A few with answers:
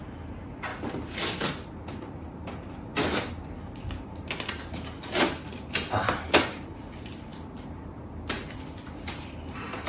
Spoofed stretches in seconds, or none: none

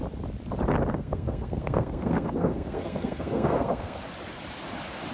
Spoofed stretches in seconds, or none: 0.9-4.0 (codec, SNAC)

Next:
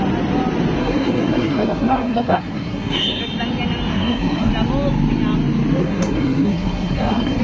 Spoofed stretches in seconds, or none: 0.8-3.2 (codec, SNAC); 3.9-4.5; 5.8-7.4